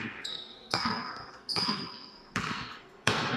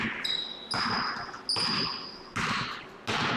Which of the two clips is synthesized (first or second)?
first